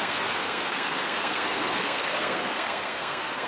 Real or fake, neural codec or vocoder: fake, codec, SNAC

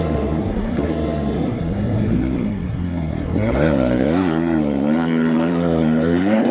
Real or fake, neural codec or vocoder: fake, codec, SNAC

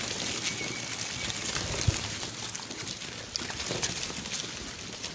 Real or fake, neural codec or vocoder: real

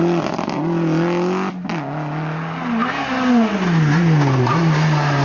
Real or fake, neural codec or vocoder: real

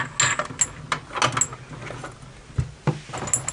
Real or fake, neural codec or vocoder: real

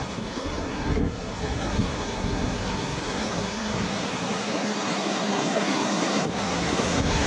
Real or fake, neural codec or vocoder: fake, codec, SNAC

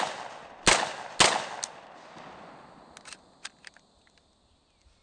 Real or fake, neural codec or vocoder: real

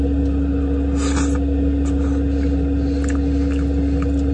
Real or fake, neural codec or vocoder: real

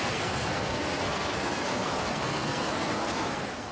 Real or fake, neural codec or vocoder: fake, codec, SNAC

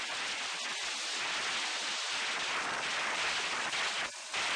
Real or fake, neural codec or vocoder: real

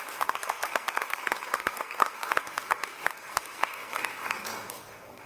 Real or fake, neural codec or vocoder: fake, codec, SNAC